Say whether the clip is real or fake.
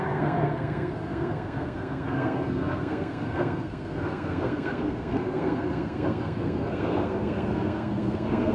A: fake